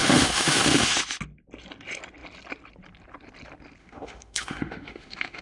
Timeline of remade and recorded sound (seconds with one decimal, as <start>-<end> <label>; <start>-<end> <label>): 0.0-1.0 remade; 1.0-3.8 recorded; 3.8-5.4 remade